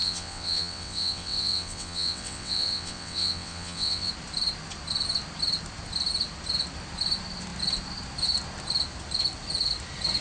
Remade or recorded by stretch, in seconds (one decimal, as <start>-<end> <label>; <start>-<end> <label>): 0.0-4.1 remade; 4.1-10.2 recorded